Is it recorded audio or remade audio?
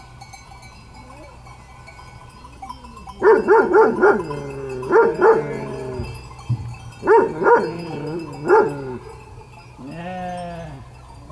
recorded